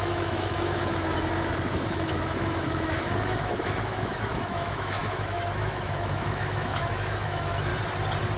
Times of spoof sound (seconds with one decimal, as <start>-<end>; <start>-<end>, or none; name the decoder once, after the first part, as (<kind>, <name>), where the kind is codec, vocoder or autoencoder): 0.0-7.7 (autoencoder, DAC-VAE)